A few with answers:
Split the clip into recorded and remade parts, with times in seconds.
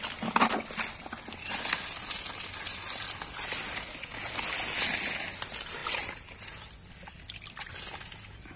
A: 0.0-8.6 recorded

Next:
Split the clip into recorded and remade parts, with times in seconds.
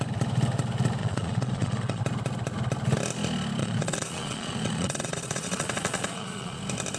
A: 0.0-1.0 recorded; 1.0-2.0 remade; 2.0-3.6 recorded; 3.6-6.6 remade; 6.6-7.0 recorded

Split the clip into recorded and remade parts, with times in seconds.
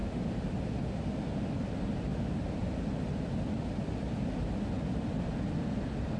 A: 0.0-0.7 remade; 0.7-6.2 recorded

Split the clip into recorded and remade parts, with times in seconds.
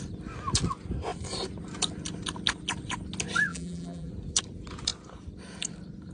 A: 0.0-3.5 recorded; 3.5-4.1 remade; 4.1-6.1 recorded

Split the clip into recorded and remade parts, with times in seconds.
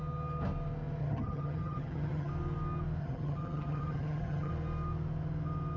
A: 0.0-1.0 recorded; 1.0-2.3 remade; 2.3-3.0 recorded; 3.0-4.5 remade; 4.5-5.8 recorded